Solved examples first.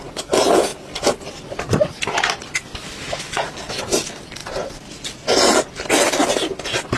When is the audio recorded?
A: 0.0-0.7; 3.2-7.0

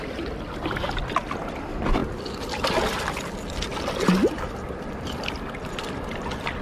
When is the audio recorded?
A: 0.0-6.6

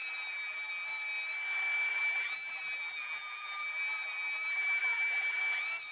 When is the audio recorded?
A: 0.7-1.9; 5.4-5.9

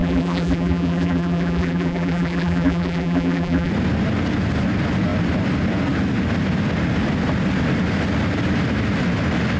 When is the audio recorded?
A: 3.7-9.6

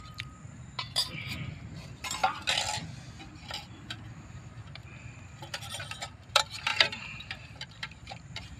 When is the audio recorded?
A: 2.2-4.2; 4.8-5.7

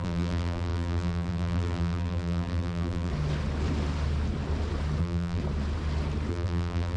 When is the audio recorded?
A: 3.1-5.0; 5.4-6.3

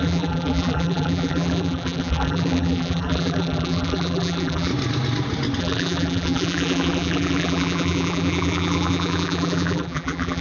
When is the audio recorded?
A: 4.7-5.6

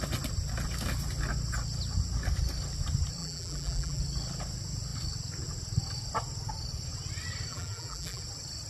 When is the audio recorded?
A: 0.0-3.2; 4.0-7.5; 8.2-8.7